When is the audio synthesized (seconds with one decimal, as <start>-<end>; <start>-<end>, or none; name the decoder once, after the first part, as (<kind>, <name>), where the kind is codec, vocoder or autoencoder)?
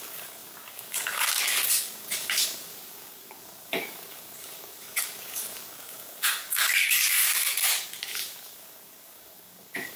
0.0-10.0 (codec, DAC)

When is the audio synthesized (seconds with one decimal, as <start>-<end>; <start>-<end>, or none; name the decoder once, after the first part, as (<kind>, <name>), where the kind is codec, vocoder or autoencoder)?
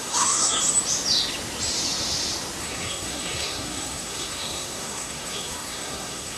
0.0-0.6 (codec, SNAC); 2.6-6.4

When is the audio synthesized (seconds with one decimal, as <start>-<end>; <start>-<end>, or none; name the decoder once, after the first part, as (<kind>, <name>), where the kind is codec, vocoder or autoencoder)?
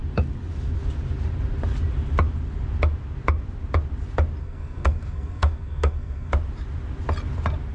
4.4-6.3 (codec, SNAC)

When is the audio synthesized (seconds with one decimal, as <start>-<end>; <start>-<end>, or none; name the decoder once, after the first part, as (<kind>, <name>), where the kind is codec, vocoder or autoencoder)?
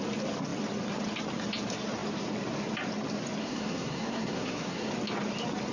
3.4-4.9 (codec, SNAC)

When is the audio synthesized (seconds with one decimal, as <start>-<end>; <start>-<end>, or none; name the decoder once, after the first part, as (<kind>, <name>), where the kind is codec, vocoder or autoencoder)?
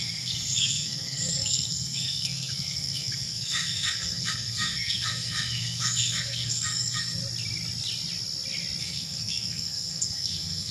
0.0-7.2 (codec, SNAC); 8.8-10.7